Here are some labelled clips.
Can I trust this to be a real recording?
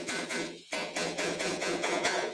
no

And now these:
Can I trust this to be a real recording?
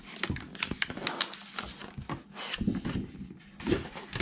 yes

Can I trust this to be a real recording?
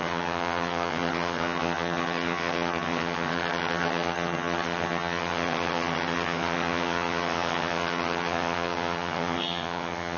no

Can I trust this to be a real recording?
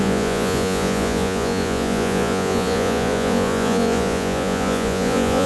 no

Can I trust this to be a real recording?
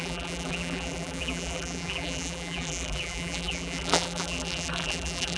no